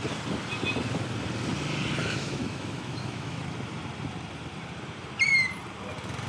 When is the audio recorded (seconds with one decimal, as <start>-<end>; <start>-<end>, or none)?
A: 0.0-2.0; 3.4-6.3